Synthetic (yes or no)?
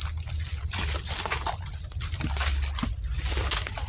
no